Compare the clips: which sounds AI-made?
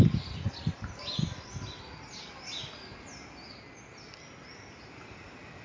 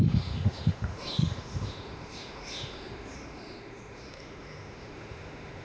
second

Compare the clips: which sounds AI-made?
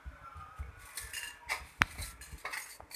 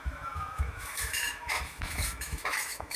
second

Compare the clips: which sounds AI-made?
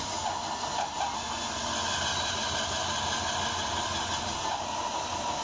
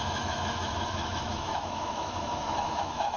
second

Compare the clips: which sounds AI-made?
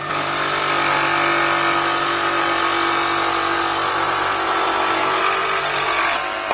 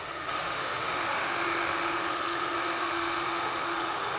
second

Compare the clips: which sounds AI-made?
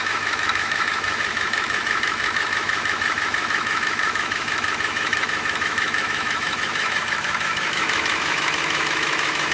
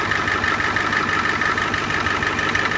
first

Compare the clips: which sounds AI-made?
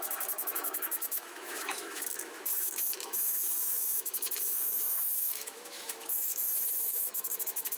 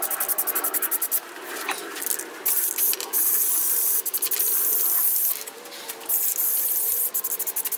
first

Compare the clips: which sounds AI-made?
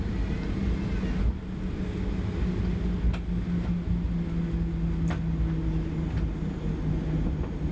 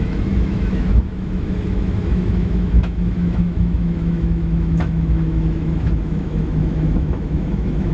second